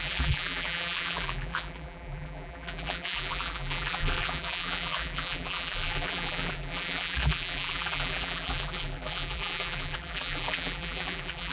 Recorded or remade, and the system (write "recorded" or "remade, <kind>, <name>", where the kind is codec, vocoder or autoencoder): remade, vocoder, BigVGAN v2